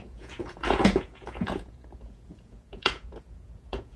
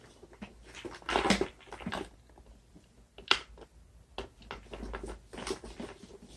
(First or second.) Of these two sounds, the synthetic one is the first